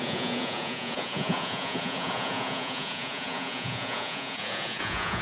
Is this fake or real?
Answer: fake